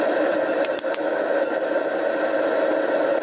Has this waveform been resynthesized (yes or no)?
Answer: no